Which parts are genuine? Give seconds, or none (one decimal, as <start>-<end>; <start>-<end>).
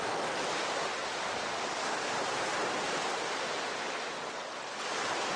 0.0-5.4